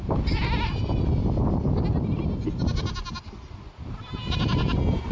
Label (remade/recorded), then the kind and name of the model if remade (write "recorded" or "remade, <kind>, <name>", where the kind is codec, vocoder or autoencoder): recorded